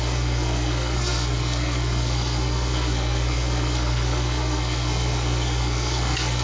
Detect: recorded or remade remade